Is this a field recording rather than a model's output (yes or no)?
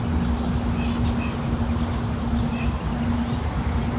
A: yes